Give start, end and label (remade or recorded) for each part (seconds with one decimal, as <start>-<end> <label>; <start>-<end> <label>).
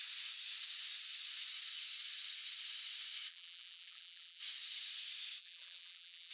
0.0-3.3 recorded; 3.3-4.4 remade; 4.4-5.4 recorded; 5.4-6.3 remade